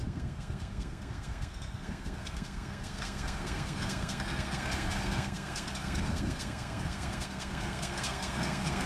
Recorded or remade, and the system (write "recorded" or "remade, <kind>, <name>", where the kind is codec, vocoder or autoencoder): remade, codec, SNAC